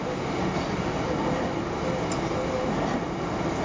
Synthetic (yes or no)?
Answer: no